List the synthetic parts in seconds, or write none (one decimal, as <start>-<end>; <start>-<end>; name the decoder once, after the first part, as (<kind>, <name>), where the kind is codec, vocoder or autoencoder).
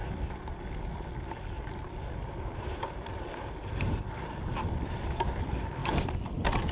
0.0-5.8 (vocoder, BigVGAN v2)